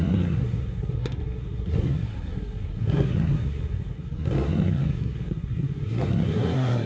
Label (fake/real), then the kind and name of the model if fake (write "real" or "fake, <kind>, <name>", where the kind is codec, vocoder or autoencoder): fake, codec, SNAC